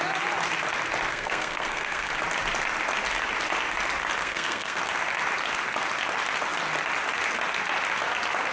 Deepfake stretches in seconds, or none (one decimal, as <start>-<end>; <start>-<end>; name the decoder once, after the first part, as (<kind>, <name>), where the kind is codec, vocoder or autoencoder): 1.1-2.1 (codec, SNAC); 4.2-4.8